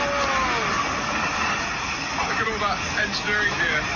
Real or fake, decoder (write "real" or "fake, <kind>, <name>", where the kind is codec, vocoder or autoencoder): real